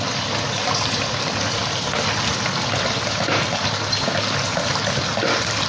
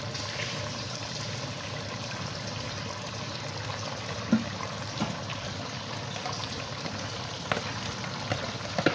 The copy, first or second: second